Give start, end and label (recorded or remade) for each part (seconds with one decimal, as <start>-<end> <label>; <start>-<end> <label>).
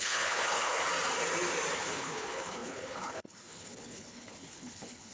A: 0.0-0.8 remade; 0.8-1.8 recorded; 1.8-5.1 remade